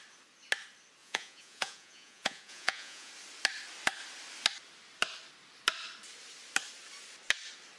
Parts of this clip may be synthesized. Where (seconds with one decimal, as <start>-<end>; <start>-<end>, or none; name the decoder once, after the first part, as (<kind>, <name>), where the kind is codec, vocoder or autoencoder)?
1.0-3.1 (vocoder, Vocos)